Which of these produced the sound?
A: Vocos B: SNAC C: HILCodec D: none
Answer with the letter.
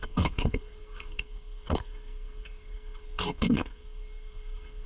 B